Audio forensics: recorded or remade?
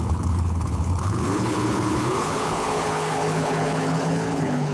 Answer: remade